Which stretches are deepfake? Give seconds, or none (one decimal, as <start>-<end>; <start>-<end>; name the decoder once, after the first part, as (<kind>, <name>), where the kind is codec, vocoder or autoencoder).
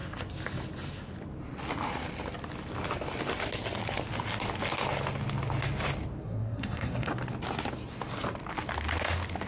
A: 6.2-7.1 (codec, SNAC)